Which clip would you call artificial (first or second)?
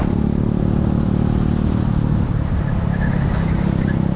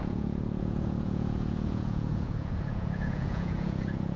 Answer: second